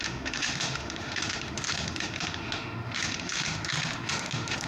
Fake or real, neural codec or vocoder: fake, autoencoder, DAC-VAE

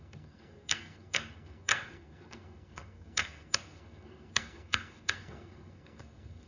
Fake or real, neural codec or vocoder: fake, codec, SNAC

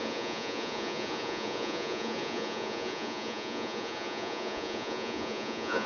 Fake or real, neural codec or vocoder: fake, vocoder, Vocos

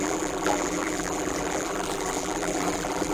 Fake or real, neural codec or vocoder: fake, vocoder, BigVGAN v2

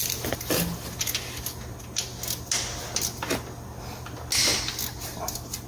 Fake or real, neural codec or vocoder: real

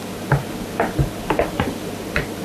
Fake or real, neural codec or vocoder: real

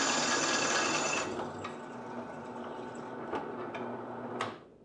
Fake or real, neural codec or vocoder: real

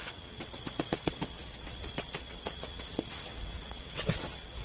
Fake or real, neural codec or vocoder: fake, vocoder, WaveNeXt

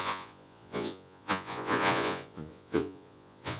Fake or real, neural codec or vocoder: fake, vocoder, Vocos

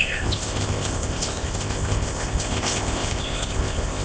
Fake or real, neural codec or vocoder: fake, codec, ZipCodec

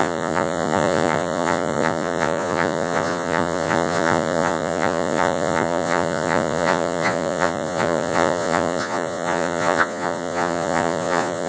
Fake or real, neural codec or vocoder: fake, vocoder, Vocos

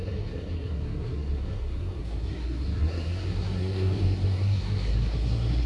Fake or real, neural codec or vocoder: fake, codec, SNAC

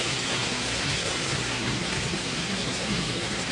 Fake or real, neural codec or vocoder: fake, codec, SNAC